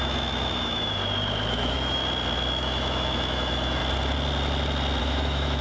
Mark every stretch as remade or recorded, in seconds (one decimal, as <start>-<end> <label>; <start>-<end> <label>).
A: 0.0-1.0 remade; 1.0-1.5 recorded; 1.5-2.0 remade; 2.0-2.5 recorded; 2.5-3.8 remade; 3.8-5.0 recorded; 5.0-5.6 remade